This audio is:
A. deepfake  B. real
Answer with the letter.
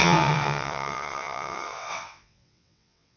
A